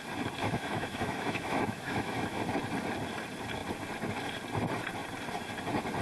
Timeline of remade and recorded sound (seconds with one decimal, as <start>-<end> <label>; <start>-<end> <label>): 0.0-0.4 recorded; 0.4-2.4 remade; 2.4-6.0 recorded